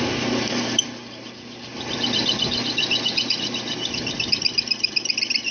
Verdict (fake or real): real